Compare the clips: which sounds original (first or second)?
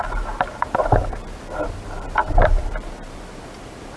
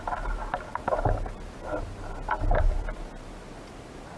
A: second